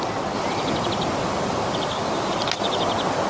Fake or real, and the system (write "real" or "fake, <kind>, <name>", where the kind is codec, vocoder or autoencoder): real